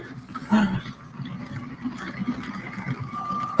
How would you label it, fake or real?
real